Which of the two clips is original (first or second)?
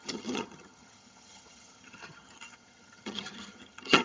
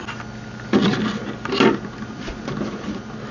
second